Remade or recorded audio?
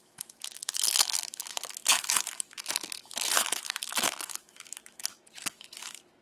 remade